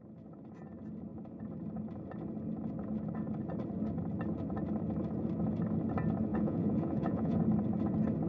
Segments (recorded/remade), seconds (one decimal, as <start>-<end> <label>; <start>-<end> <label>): 0.0-6.3 recorded; 6.3-7.4 remade; 7.4-8.3 recorded

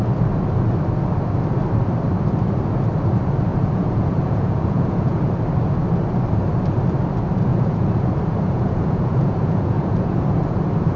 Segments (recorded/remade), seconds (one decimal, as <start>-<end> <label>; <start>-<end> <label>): 0.0-3.5 recorded; 3.5-5.3 remade; 5.3-7.5 recorded; 7.5-10.4 remade; 10.4-11.0 recorded

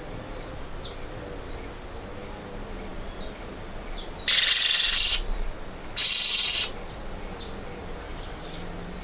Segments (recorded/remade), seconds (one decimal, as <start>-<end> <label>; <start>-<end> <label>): 0.0-9.0 recorded